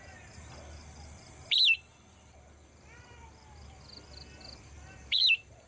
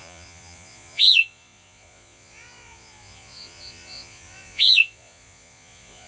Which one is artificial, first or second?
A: second